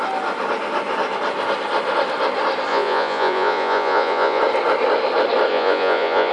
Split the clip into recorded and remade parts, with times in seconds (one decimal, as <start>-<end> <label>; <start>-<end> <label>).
0.0-2.7 recorded; 2.7-4.4 remade; 4.4-5.5 recorded; 5.5-6.3 remade